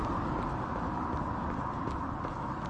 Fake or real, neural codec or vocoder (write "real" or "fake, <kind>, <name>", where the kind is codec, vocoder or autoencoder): real